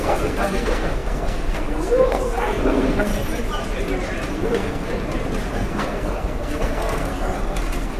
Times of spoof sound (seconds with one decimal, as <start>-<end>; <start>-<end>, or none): 0.0-3.1; 4.3-4.9; 5.5-8.0